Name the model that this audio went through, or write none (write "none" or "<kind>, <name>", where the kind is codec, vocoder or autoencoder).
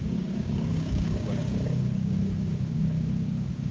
codec, DAC